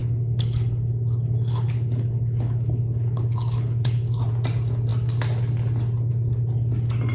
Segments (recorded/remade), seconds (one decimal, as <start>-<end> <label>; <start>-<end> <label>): 0.0-4.3 remade; 4.3-7.1 recorded